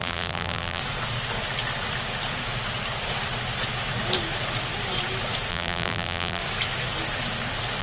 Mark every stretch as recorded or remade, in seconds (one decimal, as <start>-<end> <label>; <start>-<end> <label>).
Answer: 0.0-0.8 remade; 0.8-5.5 recorded; 5.5-6.4 remade; 6.4-7.8 recorded